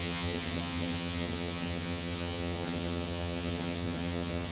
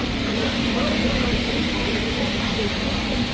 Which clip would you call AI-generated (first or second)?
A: first